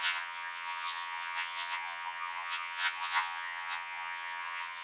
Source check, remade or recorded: remade